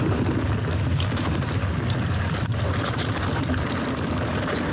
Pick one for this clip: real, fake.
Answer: real